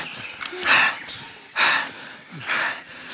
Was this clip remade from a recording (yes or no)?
no